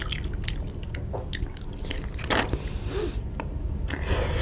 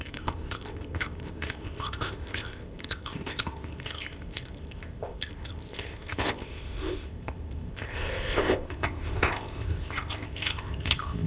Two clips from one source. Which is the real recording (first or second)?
first